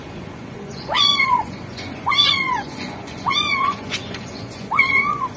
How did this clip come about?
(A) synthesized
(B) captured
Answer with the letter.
A